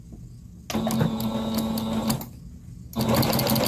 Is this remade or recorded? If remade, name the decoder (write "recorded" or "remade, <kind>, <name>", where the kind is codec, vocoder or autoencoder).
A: recorded